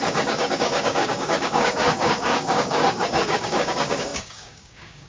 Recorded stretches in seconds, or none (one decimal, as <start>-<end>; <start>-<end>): none